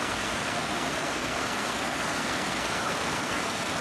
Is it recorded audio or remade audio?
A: remade